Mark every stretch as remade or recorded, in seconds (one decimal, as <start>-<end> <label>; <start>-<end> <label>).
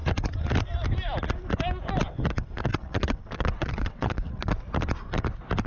0.0-2.7 recorded; 2.7-4.5 remade; 4.5-5.7 recorded